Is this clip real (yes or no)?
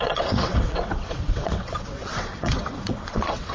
no